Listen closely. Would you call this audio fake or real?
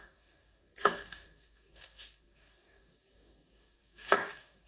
fake